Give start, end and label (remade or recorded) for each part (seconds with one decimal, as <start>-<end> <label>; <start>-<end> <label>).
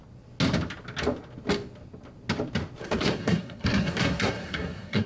0.0-2.8 recorded; 2.8-5.1 remade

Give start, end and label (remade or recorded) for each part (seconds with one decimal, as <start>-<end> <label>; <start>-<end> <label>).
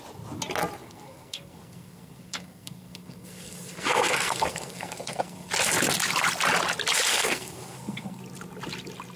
0.0-0.8 recorded; 0.8-5.5 remade; 5.5-7.1 recorded; 7.1-8.2 remade; 8.2-9.2 recorded